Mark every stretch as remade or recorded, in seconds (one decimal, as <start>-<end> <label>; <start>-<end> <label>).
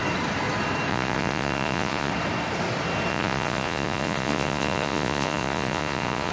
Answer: 0.0-0.9 recorded; 0.9-2.1 remade; 2.1-3.1 recorded; 3.1-6.3 remade